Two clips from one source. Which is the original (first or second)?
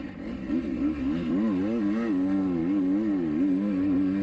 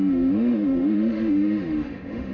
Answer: first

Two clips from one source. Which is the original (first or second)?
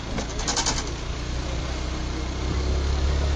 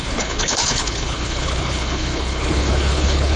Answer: first